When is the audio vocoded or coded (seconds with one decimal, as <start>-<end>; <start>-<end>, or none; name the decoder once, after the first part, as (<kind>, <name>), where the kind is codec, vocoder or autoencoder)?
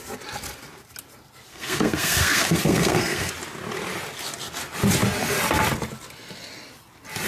1.5-3.3 (codec, SNAC)